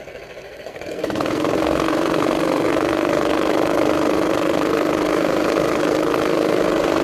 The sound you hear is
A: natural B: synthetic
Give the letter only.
B